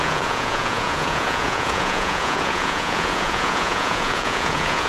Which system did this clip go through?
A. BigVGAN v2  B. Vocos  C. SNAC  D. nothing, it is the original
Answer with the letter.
B